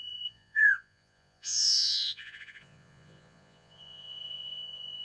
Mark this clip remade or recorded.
remade